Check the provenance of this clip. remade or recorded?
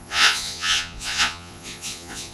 remade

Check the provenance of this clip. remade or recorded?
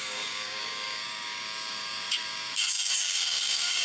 remade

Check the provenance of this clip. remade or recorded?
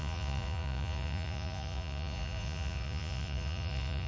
remade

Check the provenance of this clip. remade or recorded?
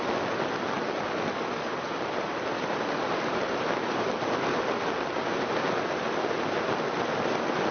recorded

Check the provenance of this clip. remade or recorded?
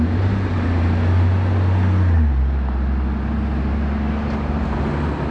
recorded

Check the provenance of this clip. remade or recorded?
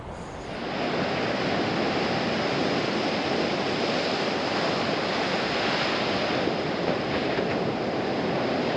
recorded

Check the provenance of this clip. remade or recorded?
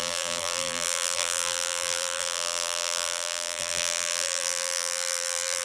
remade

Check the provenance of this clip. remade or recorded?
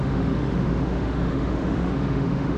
remade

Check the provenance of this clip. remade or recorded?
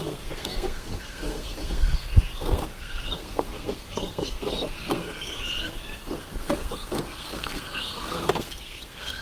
remade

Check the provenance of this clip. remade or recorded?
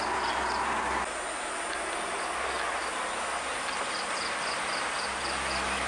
recorded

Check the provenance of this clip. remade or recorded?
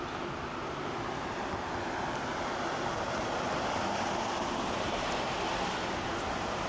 recorded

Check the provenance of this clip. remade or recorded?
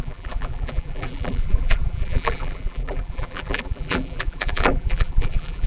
remade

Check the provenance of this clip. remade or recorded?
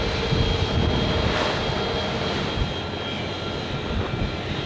recorded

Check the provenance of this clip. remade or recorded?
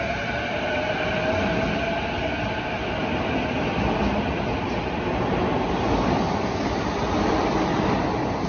recorded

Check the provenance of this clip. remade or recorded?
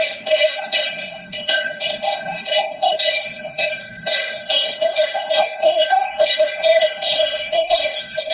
remade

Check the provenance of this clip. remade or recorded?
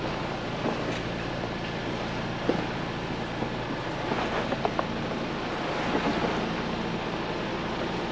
recorded